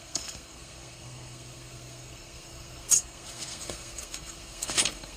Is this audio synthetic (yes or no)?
yes